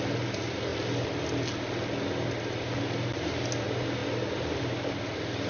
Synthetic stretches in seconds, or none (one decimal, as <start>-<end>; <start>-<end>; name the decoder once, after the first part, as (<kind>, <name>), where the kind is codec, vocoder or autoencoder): none